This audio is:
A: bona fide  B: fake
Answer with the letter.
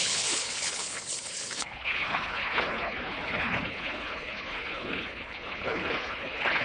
B